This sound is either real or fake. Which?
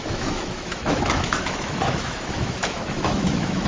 fake